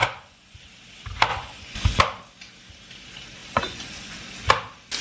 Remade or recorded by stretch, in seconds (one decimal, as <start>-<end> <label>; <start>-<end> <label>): 0.0-0.6 remade; 0.6-1.3 recorded; 1.3-2.0 remade; 2.0-3.4 recorded; 3.4-4.2 remade; 4.2-5.0 recorded